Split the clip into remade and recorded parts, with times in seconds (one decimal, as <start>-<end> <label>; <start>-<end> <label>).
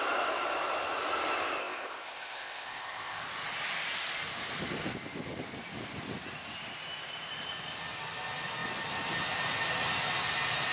0.0-1.6 recorded; 1.6-3.2 remade; 3.2-10.7 recorded